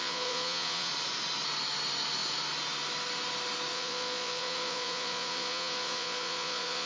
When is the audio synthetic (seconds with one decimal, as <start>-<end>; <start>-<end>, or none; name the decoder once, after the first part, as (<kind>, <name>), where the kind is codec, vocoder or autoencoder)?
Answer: 0.0-0.9 (vocoder, Vocos); 3.7-6.9